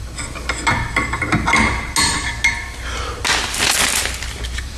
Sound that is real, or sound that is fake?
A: real